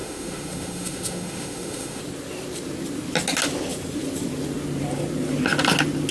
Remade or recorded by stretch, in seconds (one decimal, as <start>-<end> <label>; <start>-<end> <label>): 0.0-2.0 remade; 2.0-6.1 recorded